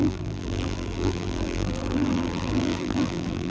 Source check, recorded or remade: remade